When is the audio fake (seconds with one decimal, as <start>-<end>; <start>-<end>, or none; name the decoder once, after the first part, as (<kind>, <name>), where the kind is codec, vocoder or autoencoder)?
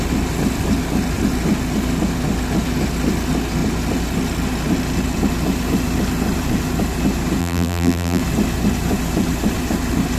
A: 7.4-8.2 (vocoder, BigVGAN v2)